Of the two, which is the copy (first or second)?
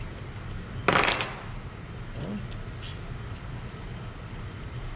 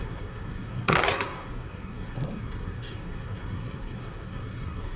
second